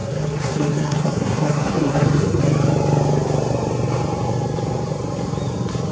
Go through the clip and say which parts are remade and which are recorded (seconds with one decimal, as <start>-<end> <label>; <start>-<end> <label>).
0.0-2.4 remade; 2.4-5.9 recorded